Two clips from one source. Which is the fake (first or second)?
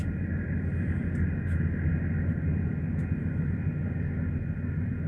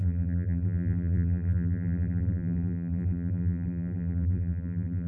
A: second